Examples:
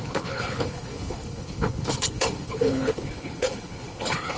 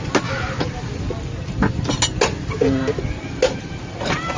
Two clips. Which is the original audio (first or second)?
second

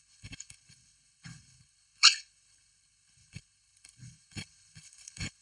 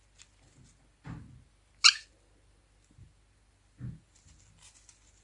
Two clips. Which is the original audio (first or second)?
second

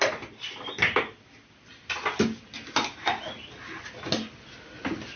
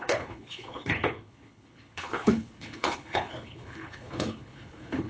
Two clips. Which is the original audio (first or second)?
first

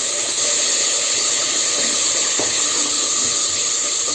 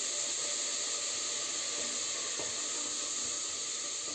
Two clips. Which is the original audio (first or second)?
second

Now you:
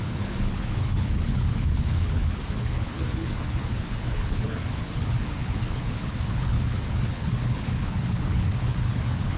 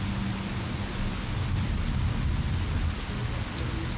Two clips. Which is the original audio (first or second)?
second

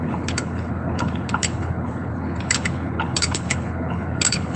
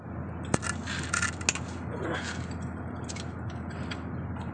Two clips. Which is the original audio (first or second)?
second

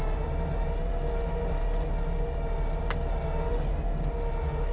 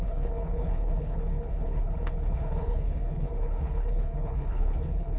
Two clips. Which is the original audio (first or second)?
first